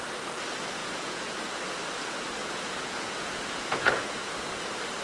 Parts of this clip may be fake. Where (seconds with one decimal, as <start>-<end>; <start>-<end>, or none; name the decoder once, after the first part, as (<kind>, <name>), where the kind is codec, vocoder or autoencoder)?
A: 0.8-1.4 (vocoder, Vocos); 2.4-4.3